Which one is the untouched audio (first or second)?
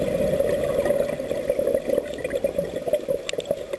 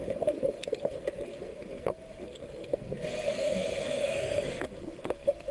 first